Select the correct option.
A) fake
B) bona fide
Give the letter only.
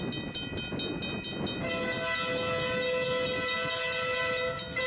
B